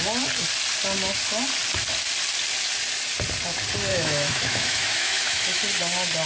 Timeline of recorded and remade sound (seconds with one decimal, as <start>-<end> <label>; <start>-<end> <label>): 0.0-3.9 recorded; 3.9-5.6 remade; 5.6-6.3 recorded